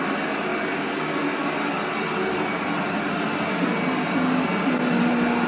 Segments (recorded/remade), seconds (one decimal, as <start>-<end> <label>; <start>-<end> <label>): 0.0-5.5 recorded